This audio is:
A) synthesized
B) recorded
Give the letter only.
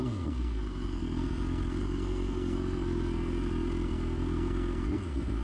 A